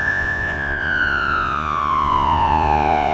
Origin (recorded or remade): remade